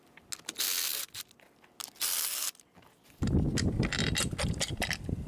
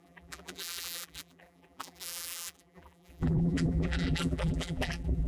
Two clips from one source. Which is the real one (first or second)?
first